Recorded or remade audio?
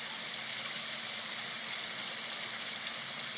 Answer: recorded